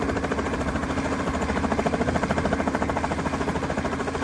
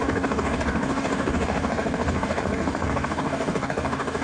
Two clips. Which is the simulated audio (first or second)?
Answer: second